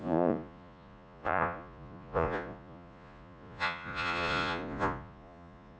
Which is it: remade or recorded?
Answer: remade